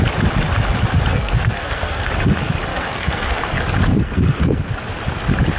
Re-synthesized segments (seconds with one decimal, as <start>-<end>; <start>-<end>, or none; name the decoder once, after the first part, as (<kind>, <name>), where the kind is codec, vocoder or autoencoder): 1.1-2.1 (codec, SNAC); 2.7-3.4; 3.9-4.7